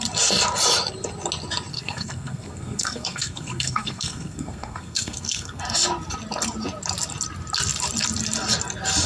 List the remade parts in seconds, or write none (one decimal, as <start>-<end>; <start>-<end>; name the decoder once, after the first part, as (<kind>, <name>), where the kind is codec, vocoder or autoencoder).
1.7-5.6 (codec, SNAC)